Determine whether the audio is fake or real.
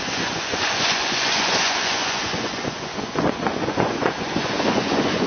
fake